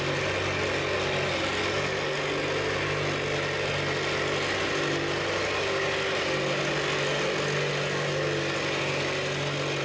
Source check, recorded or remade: recorded